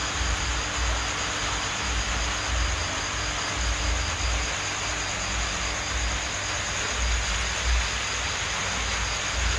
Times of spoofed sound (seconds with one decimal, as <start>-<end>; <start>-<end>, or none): none